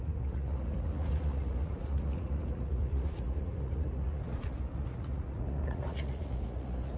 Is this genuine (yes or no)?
no